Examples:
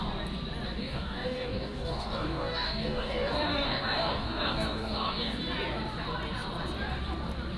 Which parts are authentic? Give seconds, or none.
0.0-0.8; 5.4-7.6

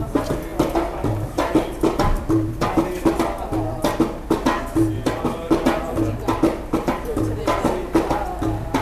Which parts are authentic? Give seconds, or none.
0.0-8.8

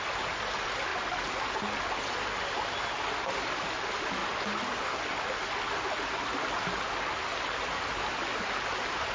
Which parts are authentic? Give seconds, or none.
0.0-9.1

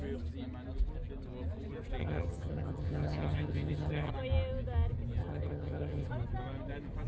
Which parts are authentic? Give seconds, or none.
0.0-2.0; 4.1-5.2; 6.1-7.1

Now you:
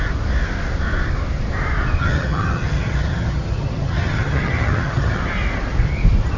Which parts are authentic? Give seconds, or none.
0.0-2.0; 5.2-6.4